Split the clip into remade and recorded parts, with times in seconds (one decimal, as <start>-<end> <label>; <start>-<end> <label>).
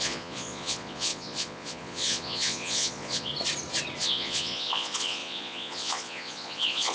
0.0-3.3 remade; 3.3-4.0 recorded; 4.0-6.9 remade